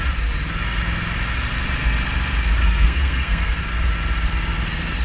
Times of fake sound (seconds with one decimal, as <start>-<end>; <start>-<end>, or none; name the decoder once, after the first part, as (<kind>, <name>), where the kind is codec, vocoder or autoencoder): 2.6-3.6 (codec, SNAC)